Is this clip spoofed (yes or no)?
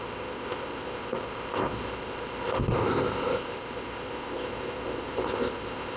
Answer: yes